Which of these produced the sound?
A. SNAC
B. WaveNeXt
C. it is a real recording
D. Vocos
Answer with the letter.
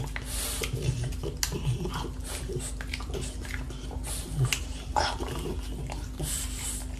C